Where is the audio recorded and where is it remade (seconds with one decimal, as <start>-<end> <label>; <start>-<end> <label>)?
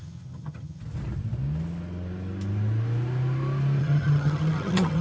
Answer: 0.0-0.8 remade; 0.8-3.8 recorded; 3.8-5.0 remade